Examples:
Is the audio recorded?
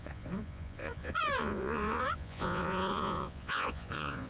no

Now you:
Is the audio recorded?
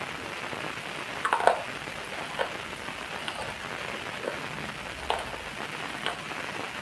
yes